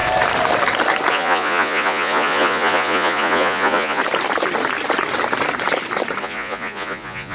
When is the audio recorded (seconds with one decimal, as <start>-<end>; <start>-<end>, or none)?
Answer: 0.0-1.1; 4.0-6.2